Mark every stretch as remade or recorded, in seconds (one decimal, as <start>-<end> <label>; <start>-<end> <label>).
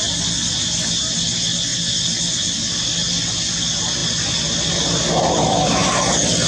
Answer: 0.0-6.5 recorded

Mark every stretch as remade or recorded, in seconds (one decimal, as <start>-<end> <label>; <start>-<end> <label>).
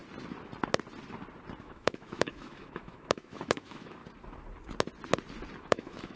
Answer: 0.0-1.6 recorded; 1.6-4.0 remade; 4.0-5.6 recorded; 5.6-6.2 remade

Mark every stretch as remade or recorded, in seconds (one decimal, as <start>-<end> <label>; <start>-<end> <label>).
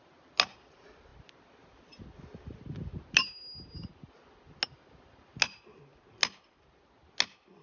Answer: 0.0-7.6 recorded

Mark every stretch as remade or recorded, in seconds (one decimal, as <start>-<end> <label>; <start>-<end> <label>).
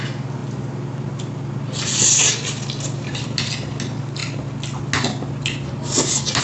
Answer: 0.0-6.4 recorded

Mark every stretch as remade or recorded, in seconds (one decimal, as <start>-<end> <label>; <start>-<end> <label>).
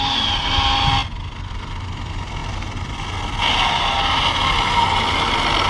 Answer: 0.0-5.7 recorded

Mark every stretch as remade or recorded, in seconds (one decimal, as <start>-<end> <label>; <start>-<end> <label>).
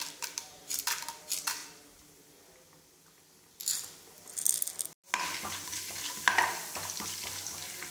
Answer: 0.0-1.6 recorded; 1.6-2.3 remade; 2.3-7.9 recorded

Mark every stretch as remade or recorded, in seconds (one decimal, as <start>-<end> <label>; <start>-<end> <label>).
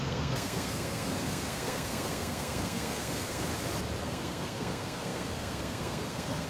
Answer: 0.0-3.5 remade; 3.5-4.0 recorded; 4.0-6.5 remade